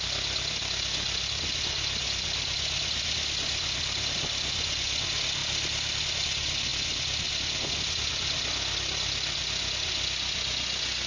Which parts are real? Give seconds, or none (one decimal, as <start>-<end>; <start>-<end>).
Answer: 5.4-6.0